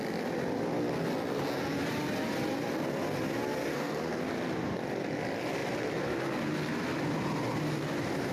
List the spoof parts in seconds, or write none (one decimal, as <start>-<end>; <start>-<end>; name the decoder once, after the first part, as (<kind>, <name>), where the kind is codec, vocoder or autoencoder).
3.7-4.2 (codec, SNAC)